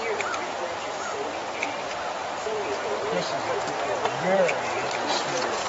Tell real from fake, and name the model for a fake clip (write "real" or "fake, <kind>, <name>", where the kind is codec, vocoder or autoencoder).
real